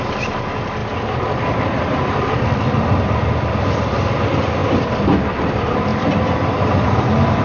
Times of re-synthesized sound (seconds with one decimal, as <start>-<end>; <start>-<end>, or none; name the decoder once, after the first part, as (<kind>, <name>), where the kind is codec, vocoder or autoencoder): 0.8-3.3 (vocoder, BigVGAN v2); 4.6-5.5; 5.9-7.4